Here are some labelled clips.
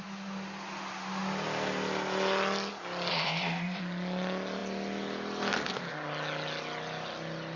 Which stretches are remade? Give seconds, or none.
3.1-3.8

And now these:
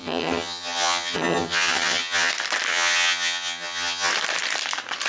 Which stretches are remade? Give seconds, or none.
0.0-2.3; 2.7-4.1

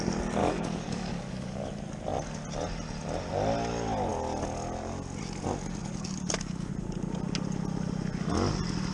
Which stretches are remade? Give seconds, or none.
0.4-1.7; 5.8-6.7

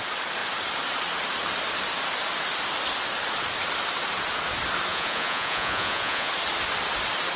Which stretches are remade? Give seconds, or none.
4.9-6.3

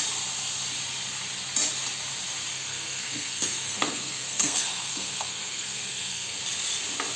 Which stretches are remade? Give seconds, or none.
2.5-6.4

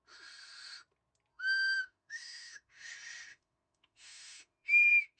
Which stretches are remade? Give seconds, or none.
1.3-2.9; 3.3-5.2

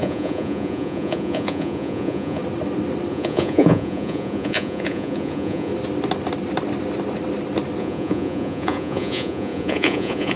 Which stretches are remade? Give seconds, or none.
0.0-2.4; 3.1-5.7; 7.8-10.4

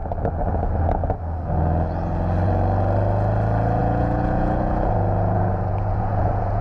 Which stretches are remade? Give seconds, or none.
3.8-6.6